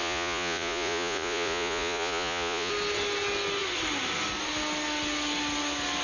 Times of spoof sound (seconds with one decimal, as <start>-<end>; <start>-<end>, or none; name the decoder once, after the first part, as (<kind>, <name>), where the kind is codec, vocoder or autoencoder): 0.0-2.7 (vocoder, Vocos)